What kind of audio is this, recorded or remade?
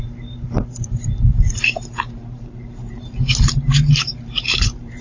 remade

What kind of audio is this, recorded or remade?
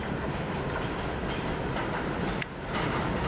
recorded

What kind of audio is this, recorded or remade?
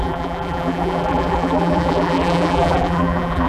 remade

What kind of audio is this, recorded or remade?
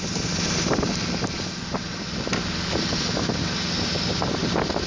recorded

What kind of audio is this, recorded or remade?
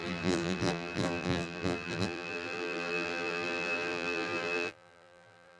remade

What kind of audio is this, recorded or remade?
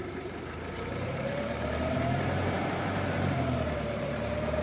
remade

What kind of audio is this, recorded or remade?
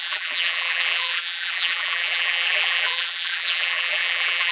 remade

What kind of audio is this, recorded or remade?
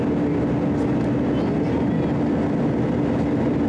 recorded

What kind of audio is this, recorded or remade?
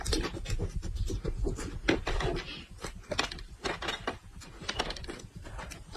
recorded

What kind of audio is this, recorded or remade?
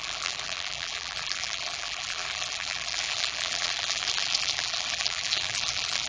remade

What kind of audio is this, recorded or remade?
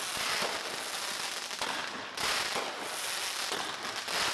recorded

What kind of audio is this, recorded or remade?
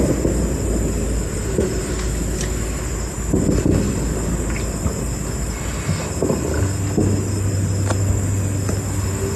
recorded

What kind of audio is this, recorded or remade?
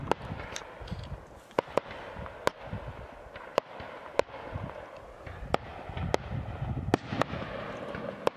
recorded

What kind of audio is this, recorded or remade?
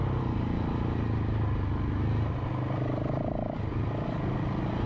recorded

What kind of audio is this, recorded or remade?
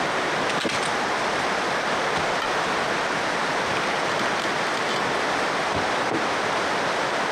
recorded